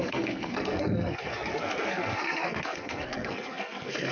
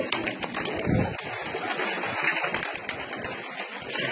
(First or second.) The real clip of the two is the second